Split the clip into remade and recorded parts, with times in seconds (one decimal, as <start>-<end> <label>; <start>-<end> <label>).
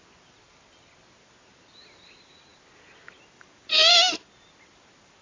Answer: 0.0-5.2 recorded